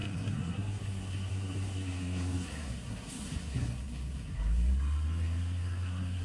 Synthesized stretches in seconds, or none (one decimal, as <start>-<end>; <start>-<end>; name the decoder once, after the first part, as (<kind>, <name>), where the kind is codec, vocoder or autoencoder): 0.0-6.2 (codec, SNAC)